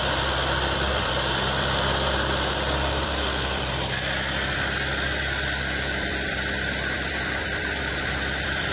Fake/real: fake